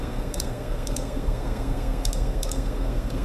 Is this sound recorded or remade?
remade